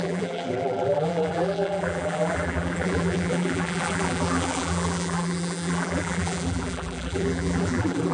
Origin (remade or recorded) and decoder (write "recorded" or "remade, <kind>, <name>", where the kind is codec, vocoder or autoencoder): remade, vocoder, BigVGAN v2